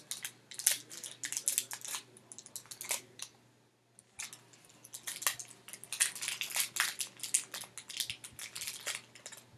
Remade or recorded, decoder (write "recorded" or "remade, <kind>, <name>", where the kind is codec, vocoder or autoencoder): recorded